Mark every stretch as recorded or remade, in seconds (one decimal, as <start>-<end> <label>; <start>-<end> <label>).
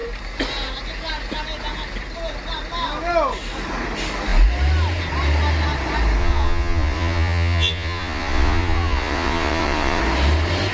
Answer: 0.0-6.2 recorded; 6.2-10.0 remade; 10.0-10.7 recorded